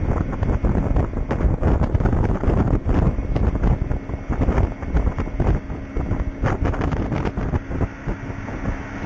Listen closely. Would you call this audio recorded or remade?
recorded